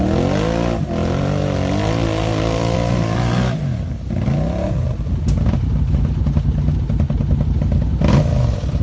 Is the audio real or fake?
real